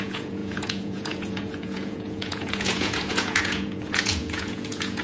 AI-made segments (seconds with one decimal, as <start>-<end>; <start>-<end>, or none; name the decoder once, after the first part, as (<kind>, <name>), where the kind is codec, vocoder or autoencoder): 0.0-5.0 (vocoder, Vocos)